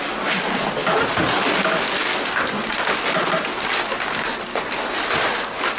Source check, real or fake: real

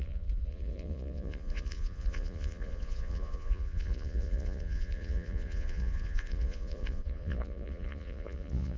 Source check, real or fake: fake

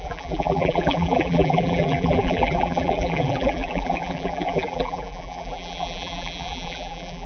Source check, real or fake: fake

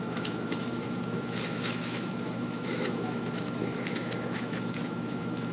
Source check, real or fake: fake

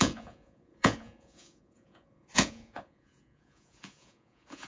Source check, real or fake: fake